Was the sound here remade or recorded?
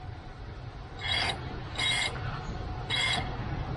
recorded